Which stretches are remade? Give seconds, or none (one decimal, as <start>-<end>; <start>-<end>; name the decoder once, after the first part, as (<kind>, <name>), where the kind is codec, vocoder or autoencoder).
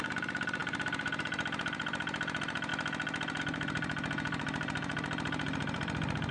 0.0-2.7 (vocoder, BigVGAN v2); 3.4-6.3